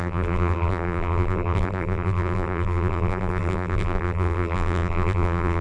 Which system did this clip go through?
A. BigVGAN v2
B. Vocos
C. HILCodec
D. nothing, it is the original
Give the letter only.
A